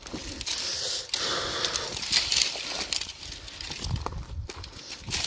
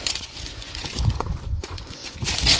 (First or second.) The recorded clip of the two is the first